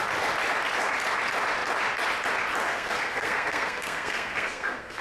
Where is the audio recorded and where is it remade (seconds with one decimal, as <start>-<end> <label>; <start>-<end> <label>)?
0.0-2.7 recorded; 2.7-5.0 remade

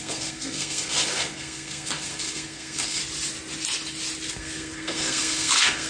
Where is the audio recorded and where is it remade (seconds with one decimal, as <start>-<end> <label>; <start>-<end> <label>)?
0.0-3.0 remade; 3.0-4.3 recorded; 4.3-5.9 remade

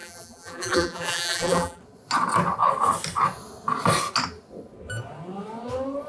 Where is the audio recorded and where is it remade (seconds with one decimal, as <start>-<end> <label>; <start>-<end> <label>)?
0.0-1.8 remade; 1.8-6.1 recorded

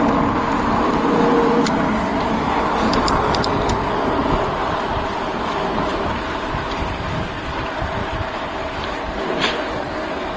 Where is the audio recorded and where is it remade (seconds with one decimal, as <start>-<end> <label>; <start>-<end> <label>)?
0.0-4.6 recorded; 4.6-5.4 remade; 5.4-5.9 recorded; 5.9-6.5 remade; 6.5-8.0 recorded; 8.0-9.5 remade; 9.5-10.4 recorded

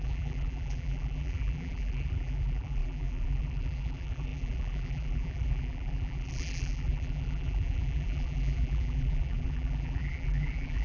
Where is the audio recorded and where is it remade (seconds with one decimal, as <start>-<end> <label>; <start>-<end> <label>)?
0.0-10.8 remade

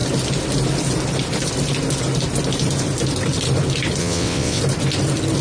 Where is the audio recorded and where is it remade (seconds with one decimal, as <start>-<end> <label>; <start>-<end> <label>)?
0.0-4.0 recorded; 4.0-4.6 remade; 4.6-5.4 recorded